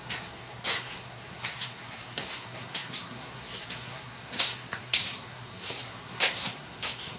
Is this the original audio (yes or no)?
no